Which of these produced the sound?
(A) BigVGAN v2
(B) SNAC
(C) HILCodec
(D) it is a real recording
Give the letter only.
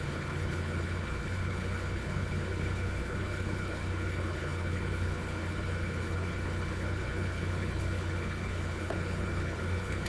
C